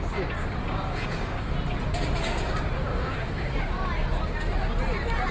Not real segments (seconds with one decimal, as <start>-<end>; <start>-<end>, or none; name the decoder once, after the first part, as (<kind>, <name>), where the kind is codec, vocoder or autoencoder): 0.6-1.5 (codec, DAC); 2.9-3.6